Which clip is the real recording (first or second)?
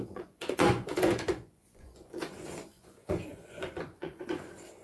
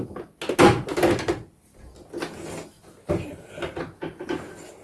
second